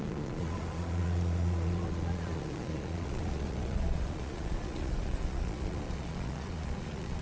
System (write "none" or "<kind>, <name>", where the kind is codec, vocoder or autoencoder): vocoder, Vocos